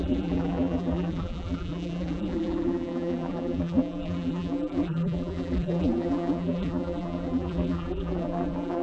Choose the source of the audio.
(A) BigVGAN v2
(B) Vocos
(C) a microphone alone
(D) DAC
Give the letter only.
A